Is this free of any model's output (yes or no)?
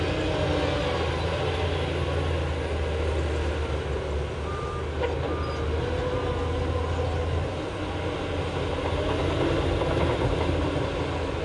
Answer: yes